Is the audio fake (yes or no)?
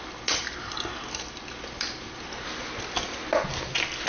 no